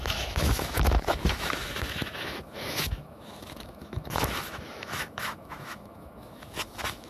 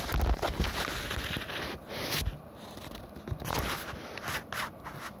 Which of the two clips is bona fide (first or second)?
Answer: second